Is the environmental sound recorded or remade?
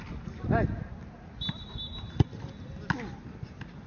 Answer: recorded